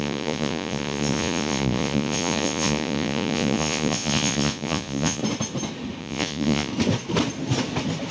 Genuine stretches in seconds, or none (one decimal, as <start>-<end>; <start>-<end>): 5.2-6.0; 6.7-8.1